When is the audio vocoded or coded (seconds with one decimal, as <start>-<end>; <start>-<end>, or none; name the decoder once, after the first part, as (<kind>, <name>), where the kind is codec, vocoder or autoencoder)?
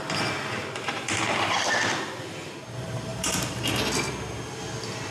0.6-1.7 (vocoder, BigVGAN v2); 3.1-3.8